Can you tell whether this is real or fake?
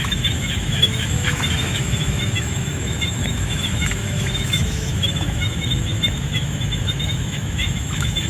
fake